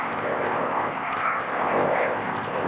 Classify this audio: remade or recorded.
remade